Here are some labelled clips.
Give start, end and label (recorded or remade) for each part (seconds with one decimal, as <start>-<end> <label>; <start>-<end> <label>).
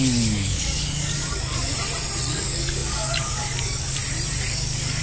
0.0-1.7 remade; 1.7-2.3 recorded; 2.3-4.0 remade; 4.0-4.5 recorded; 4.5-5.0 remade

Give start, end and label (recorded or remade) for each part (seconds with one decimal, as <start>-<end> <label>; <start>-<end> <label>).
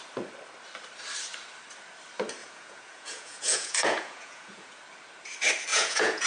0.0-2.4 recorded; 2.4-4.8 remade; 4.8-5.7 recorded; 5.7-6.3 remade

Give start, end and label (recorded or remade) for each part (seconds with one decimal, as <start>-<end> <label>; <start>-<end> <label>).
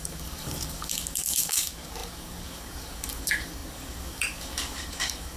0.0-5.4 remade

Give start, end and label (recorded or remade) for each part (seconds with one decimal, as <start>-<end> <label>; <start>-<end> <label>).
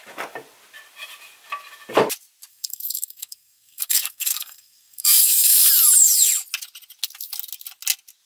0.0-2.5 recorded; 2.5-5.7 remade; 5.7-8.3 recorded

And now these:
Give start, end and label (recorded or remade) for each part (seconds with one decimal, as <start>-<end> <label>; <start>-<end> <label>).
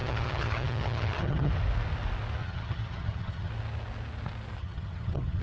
0.0-1.5 remade; 1.5-2.4 recorded; 2.4-3.5 remade; 3.5-4.6 recorded; 4.6-5.4 remade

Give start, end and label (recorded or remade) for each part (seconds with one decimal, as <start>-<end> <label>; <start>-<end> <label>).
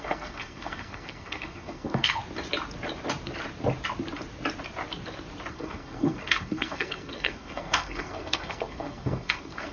0.0-2.2 remade; 2.2-5.5 recorded; 5.5-9.7 remade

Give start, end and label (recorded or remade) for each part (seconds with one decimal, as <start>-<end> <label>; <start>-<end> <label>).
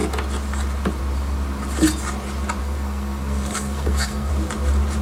0.0-2.6 recorded; 2.6-4.3 remade; 4.3-5.0 recorded